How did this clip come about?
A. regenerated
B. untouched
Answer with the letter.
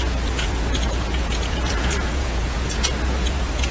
A